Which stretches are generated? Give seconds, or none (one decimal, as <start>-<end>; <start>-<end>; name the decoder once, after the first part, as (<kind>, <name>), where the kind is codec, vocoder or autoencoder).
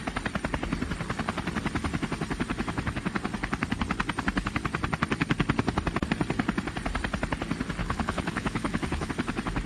7.8-9.1 (codec, HILCodec)